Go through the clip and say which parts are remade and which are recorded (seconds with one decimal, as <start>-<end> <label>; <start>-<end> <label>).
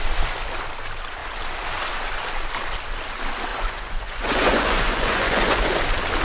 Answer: 0.0-3.5 recorded; 3.5-5.8 remade; 5.8-6.2 recorded